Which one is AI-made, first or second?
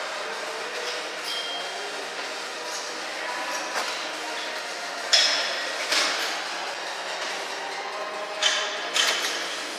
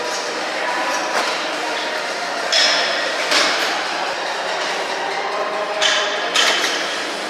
second